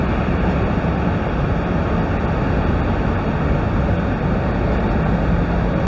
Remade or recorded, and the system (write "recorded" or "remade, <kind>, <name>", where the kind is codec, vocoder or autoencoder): recorded